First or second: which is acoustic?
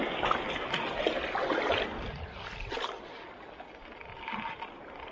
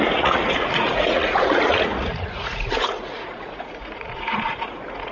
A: first